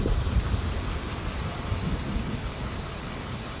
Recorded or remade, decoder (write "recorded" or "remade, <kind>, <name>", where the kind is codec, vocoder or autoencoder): remade, vocoder, BigVGAN v2